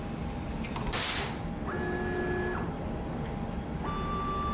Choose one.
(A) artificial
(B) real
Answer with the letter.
B